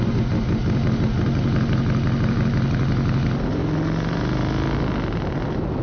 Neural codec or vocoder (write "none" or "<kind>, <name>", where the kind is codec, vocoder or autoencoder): none